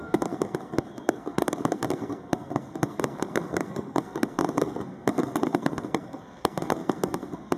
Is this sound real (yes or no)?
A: no